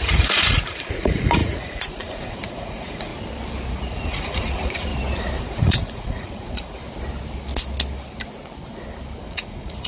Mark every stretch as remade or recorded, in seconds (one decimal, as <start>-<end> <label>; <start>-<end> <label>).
0.0-3.1 remade; 3.1-3.7 recorded; 3.7-4.9 remade; 4.9-5.4 recorded; 5.4-6.8 remade; 6.8-9.2 recorded; 9.2-9.9 remade